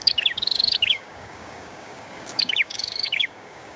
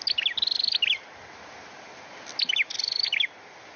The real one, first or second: second